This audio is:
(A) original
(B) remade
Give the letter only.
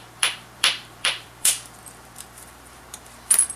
B